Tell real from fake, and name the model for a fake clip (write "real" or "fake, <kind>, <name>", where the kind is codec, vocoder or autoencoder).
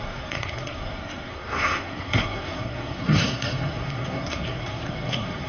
fake, codec, SNAC